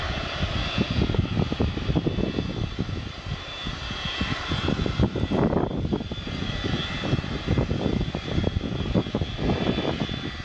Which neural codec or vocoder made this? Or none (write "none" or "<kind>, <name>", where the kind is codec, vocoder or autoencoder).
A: none